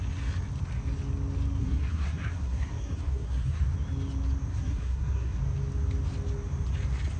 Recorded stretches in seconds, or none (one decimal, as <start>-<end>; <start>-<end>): 0.0-1.6; 3.6-4.5; 5.4-7.2